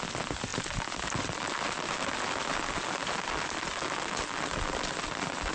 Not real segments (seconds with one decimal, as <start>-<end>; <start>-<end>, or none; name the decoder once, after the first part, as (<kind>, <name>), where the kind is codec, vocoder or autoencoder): none